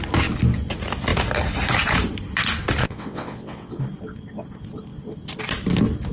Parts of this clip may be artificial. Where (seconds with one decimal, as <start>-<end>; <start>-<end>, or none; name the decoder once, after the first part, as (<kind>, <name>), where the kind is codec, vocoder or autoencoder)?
2.8-3.8 (vocoder, WaveNeXt)